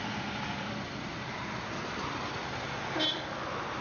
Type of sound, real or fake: real